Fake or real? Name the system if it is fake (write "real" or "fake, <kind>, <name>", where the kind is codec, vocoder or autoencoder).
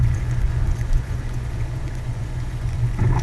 fake, vocoder, Vocos